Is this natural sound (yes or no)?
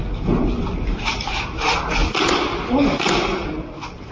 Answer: yes